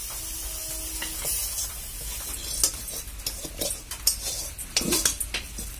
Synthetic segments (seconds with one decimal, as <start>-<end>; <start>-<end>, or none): none